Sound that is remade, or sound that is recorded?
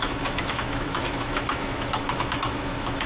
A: remade